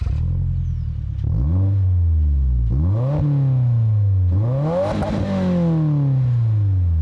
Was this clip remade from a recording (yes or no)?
no